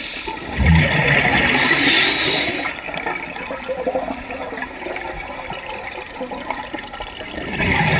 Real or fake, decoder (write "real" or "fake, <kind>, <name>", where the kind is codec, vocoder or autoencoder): real